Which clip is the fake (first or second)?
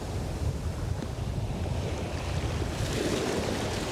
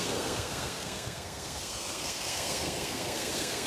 second